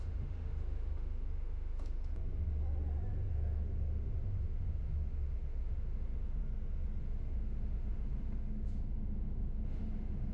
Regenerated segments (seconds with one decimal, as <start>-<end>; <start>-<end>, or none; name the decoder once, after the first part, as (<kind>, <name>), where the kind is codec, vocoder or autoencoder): 0.0-2.1 (autoencoder, DAC-VAE); 3.3-6.4; 7.0-10.3